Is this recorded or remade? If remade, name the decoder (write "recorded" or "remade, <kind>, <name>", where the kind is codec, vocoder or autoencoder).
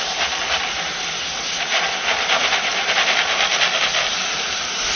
recorded